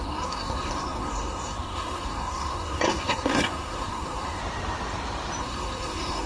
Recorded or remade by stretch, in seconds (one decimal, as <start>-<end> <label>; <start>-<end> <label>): 0.0-4.4 remade; 4.4-5.4 recorded; 5.4-6.3 remade